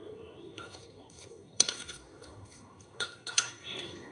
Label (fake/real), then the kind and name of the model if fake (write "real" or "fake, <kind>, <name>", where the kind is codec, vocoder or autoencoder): fake, codec, SNAC